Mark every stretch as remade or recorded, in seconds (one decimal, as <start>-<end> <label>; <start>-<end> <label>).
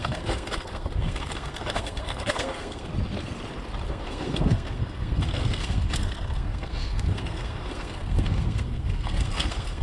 0.0-2.9 remade; 2.9-3.9 recorded; 3.9-9.8 remade